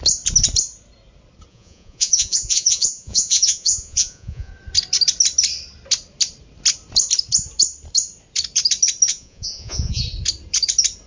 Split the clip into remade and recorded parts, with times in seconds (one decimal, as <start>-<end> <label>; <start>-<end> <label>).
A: 0.0-1.5 recorded; 1.5-4.5 remade; 4.5-9.1 recorded; 9.1-10.0 remade; 10.0-11.1 recorded